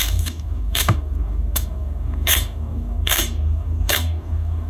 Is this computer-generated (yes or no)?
yes